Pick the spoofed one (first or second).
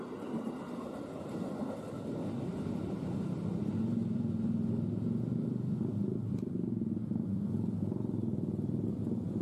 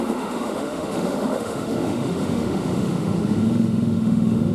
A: second